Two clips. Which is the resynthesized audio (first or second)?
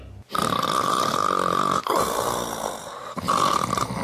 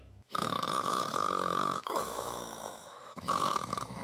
second